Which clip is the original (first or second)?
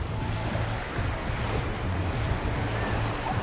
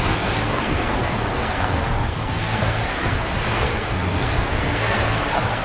first